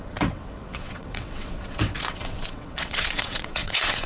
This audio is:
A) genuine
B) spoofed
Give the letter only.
B